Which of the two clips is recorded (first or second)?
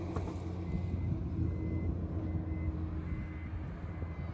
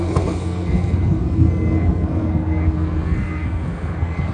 first